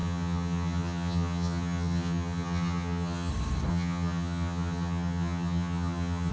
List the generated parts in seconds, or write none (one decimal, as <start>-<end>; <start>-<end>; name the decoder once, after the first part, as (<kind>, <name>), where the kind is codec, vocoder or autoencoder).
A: 0.0-3.3 (vocoder, HiFi-GAN); 3.7-6.3